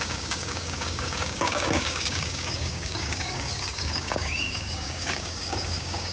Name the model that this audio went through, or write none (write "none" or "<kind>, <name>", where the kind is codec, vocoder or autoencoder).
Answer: codec, DAC